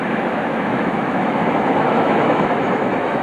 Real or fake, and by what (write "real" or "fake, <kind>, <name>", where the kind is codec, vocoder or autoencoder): fake, autoencoder, DAC-VAE